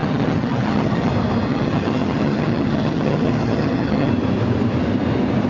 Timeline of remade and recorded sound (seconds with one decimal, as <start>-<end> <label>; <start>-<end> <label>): 0.0-1.1 remade; 1.1-1.5 recorded; 1.5-4.1 remade; 4.1-5.5 recorded